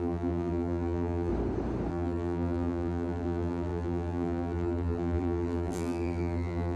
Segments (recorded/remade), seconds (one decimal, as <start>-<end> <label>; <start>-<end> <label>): 0.0-1.3 remade; 1.3-1.9 recorded; 1.9-6.8 remade